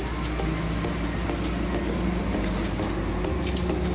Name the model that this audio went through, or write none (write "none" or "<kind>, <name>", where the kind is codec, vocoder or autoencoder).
none